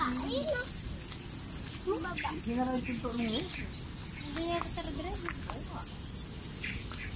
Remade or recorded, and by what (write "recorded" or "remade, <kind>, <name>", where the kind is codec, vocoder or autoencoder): recorded